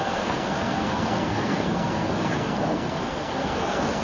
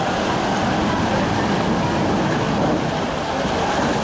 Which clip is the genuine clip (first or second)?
second